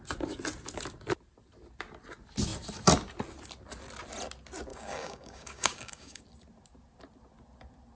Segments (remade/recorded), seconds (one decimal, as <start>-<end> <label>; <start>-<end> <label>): 0.0-4.7 recorded; 4.7-6.2 remade; 6.2-8.0 recorded